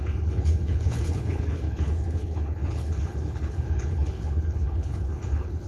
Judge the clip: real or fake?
fake